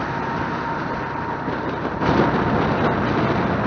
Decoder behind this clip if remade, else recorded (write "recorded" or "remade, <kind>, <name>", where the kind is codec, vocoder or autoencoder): recorded